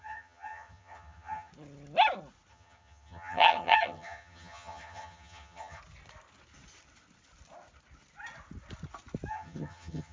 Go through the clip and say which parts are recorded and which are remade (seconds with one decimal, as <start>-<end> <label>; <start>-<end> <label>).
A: 0.0-1.5 remade; 1.5-2.5 recorded; 2.5-5.8 remade; 5.8-9.3 recorded; 9.3-10.1 remade